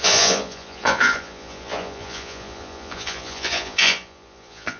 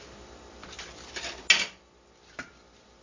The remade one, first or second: first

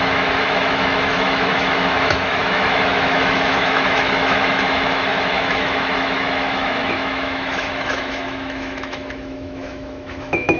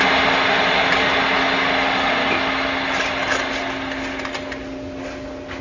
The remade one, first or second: first